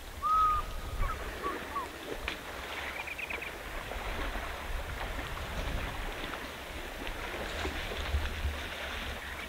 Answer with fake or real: real